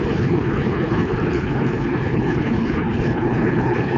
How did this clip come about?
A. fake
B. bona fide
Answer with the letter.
A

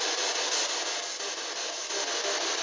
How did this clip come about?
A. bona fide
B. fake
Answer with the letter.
A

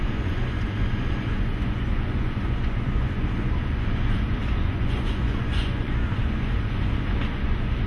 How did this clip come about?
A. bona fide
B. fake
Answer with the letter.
B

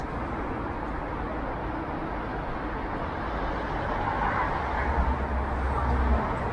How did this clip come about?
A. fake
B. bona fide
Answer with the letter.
B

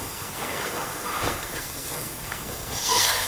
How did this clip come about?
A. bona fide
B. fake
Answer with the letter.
B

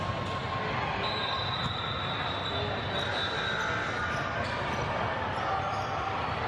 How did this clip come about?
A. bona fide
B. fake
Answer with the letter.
A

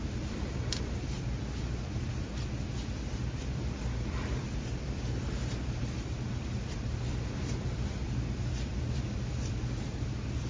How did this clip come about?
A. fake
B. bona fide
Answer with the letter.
A